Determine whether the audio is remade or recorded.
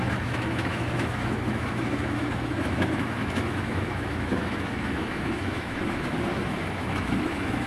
remade